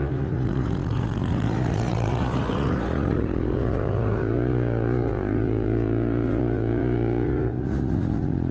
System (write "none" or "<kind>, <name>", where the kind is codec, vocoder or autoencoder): vocoder, Vocos